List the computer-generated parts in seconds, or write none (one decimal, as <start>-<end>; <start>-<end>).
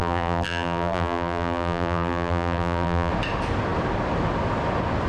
0.0-3.1